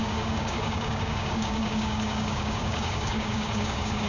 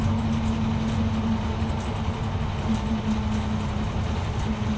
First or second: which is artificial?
first